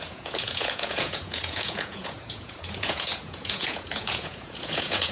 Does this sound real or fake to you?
fake